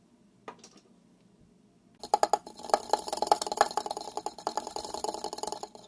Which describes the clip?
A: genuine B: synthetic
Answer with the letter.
A